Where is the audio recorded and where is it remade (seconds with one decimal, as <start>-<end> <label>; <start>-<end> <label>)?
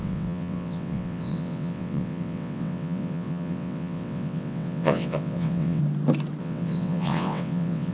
0.0-5.8 remade; 5.8-6.4 recorded; 6.4-7.9 remade